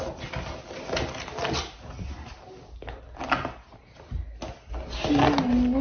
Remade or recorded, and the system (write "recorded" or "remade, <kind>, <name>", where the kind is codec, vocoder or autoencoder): recorded